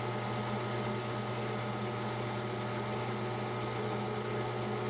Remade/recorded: recorded